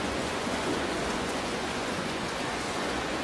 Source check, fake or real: fake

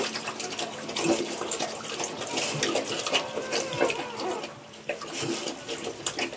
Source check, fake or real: real